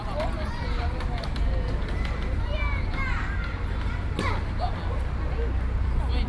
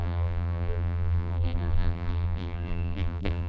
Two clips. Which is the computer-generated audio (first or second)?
second